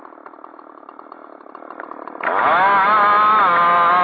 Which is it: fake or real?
real